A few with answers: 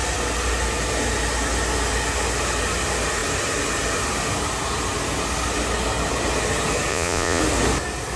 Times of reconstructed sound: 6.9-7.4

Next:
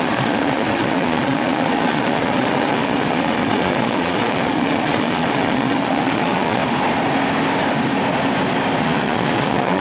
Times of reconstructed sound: 0.0-6.6; 8.8-9.8

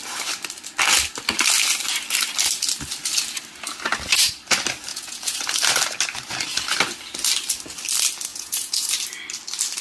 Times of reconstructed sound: 4.9-5.4; 8.3-8.9

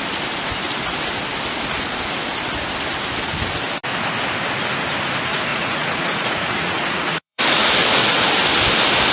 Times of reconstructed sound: 5.5-7.7

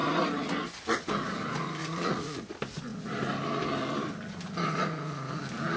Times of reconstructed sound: 1.8-2.4

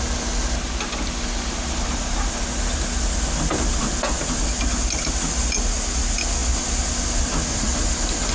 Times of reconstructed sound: none